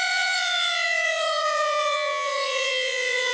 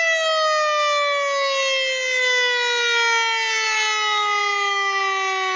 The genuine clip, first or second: second